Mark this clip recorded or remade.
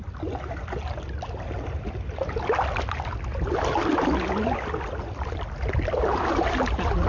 recorded